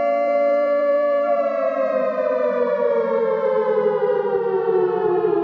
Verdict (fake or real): fake